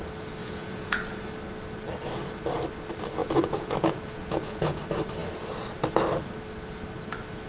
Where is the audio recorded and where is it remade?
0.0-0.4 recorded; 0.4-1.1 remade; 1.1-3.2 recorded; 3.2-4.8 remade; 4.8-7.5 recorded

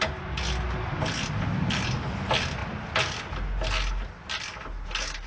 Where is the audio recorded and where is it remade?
0.0-5.3 recorded

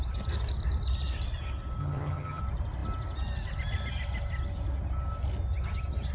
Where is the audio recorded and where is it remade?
0.0-1.8 recorded; 1.8-2.4 remade; 2.4-6.1 recorded

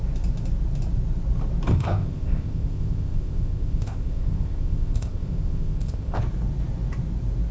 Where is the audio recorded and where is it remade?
0.0-1.7 recorded; 1.7-6.2 remade; 6.2-7.5 recorded

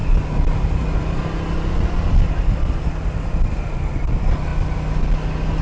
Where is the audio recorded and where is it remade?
0.0-5.6 recorded

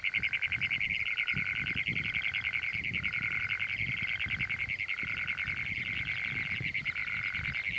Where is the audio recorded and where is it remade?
0.0-7.8 recorded

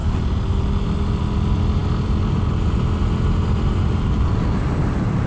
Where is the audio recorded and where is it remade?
0.0-5.3 recorded